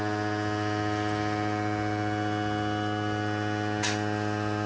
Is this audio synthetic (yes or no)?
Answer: no